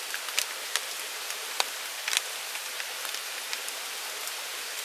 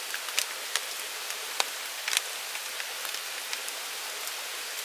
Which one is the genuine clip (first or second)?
second